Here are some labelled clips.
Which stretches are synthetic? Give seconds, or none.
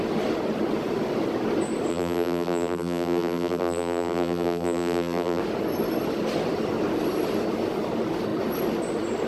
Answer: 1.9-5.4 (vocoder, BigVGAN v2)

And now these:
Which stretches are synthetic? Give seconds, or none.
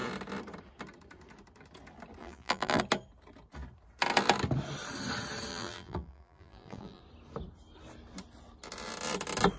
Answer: 2.2-2.8 (vocoder, BigVGAN v2); 5.5-7.0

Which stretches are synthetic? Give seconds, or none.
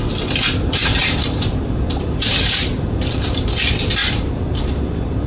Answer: 1.0-3.5 (vocoder, BigVGAN v2); 4.0-5.3